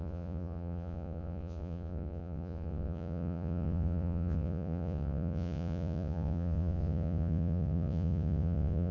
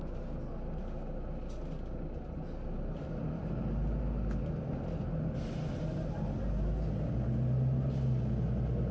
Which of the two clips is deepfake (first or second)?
first